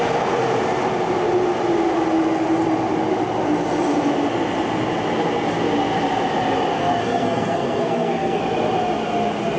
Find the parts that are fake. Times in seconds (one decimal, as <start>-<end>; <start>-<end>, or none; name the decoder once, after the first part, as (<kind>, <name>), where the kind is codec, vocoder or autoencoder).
6.7-8.4 (codec, SNAC)

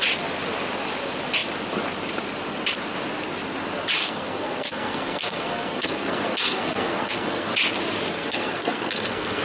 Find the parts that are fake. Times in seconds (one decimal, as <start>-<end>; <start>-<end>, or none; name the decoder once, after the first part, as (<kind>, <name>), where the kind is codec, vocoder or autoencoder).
4.0-7.5 (codec, SNAC); 8.1-9.4

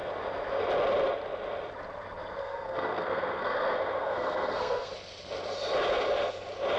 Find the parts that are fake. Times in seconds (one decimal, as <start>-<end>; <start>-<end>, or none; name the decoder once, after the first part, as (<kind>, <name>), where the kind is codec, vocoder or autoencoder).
2.4-4.9 (codec, SNAC)

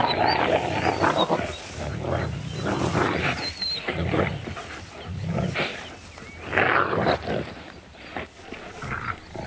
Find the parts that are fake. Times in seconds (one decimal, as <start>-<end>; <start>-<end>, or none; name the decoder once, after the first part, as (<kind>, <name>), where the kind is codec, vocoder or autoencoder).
none

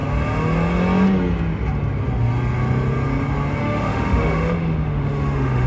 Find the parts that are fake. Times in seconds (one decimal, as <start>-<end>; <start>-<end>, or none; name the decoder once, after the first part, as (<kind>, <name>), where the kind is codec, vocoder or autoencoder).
3.6-5.7 (autoencoder, DAC-VAE)

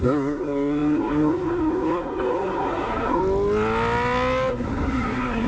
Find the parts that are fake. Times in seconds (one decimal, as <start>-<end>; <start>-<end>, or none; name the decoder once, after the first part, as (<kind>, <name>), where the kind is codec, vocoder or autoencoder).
0.0-3.2 (codec, SNAC); 4.5-5.5